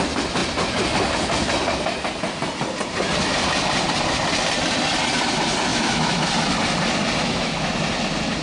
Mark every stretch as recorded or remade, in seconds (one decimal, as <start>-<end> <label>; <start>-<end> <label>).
0.0-5.7 recorded; 5.7-6.3 remade; 6.3-7.2 recorded; 7.2-7.7 remade; 7.7-8.4 recorded